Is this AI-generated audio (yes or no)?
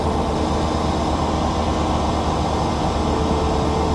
no